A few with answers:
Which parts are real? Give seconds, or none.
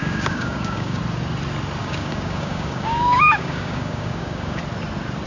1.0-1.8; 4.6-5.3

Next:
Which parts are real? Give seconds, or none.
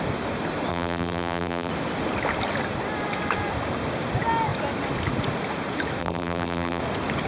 0.0-0.7; 1.7-6.0; 6.8-7.3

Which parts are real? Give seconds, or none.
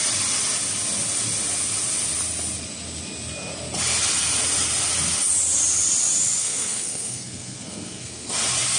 0.0-6.4; 8.3-8.8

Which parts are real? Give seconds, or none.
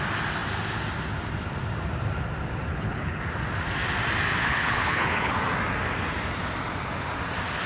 0.0-2.7; 3.2-4.4; 5.3-7.7